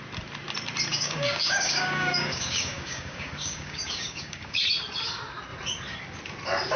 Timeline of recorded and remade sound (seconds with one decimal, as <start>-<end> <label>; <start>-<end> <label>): 0.0-0.9 recorded; 0.9-4.6 remade; 4.6-6.8 recorded